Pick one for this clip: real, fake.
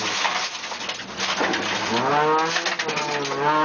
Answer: real